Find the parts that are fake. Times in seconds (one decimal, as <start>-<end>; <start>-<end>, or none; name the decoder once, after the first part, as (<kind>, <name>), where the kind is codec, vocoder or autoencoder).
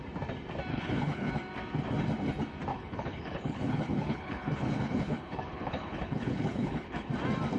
0.7-1.3 (codec, HILCodec); 2.7-7.1